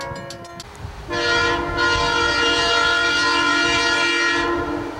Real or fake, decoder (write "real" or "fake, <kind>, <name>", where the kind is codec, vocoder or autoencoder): real